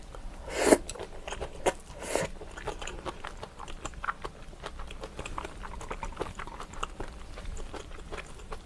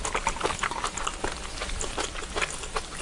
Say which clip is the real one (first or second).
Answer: second